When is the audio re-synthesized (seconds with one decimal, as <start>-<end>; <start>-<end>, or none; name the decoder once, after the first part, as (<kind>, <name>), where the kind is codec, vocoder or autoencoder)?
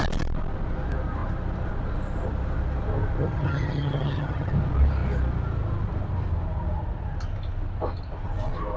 3.2-4.5 (vocoder, HiFi-GAN)